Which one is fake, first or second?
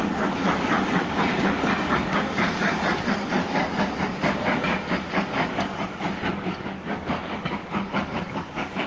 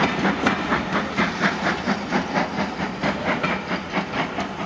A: first